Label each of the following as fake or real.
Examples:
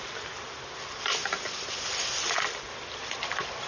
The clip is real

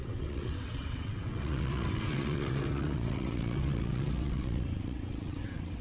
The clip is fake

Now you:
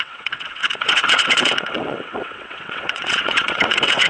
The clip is fake